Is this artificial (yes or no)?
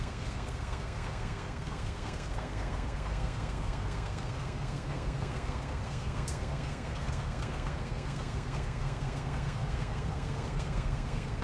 yes